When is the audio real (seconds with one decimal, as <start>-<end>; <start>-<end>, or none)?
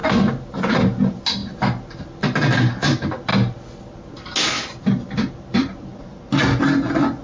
0.0-7.2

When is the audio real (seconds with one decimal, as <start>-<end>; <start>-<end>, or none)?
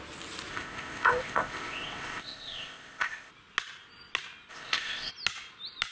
0.0-0.5; 3.3-4.5; 5.1-5.9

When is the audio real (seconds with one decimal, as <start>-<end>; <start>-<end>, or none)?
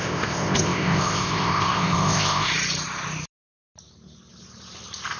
2.5-5.2